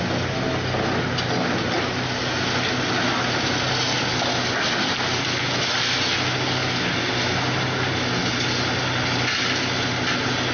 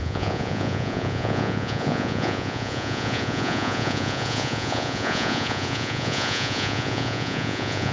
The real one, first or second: first